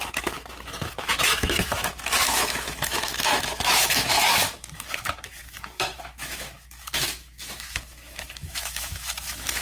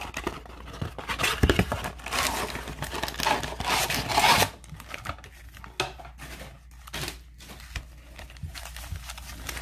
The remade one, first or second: first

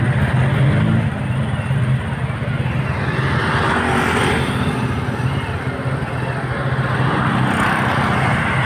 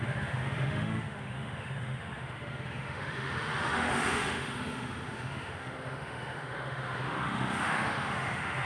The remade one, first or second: second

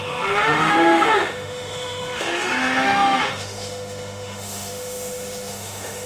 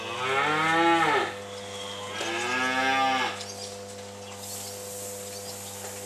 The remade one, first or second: first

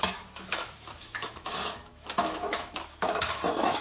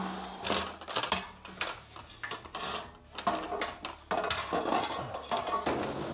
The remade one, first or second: first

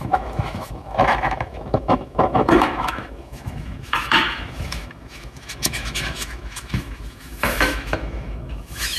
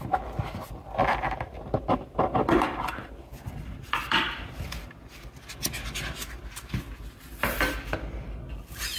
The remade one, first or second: first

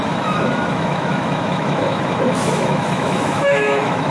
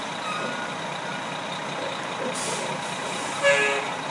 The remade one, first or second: first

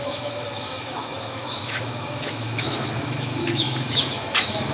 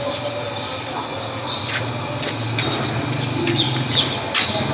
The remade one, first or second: first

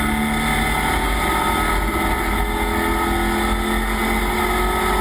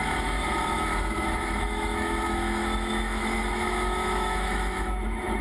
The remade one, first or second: second